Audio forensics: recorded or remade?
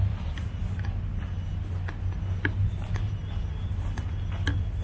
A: recorded